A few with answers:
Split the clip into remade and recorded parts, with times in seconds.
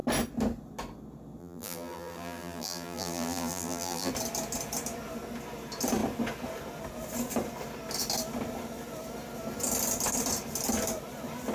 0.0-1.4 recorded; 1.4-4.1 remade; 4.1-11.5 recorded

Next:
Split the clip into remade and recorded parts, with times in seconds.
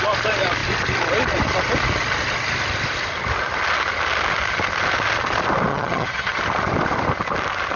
0.0-5.7 recorded; 5.7-6.4 remade; 6.4-7.8 recorded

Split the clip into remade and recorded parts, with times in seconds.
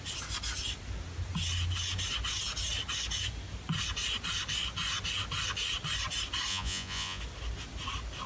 0.0-6.5 recorded; 6.5-7.2 remade; 7.2-8.3 recorded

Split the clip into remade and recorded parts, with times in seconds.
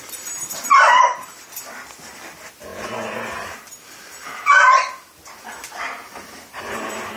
0.0-7.2 recorded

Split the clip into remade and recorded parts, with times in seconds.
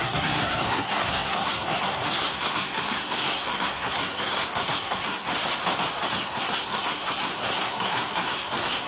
0.0-5.3 remade; 5.3-6.1 recorded; 6.1-8.9 remade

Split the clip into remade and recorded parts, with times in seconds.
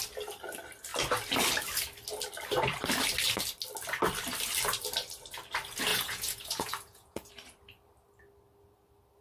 0.0-5.9 recorded; 5.9-7.3 remade; 7.3-9.2 recorded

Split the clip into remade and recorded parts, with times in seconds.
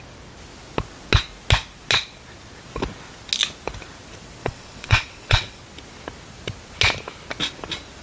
0.0-4.4 recorded; 4.4-5.6 remade; 5.6-8.0 recorded